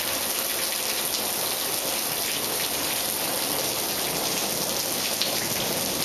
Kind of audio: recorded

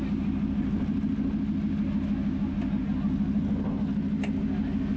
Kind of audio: recorded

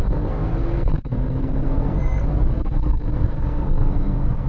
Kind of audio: remade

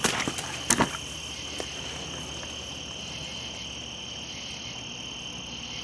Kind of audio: recorded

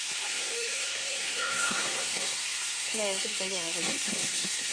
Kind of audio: remade